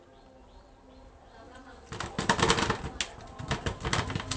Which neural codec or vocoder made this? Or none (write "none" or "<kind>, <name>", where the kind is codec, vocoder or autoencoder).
none